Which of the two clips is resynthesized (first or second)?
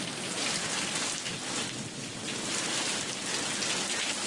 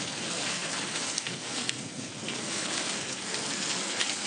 second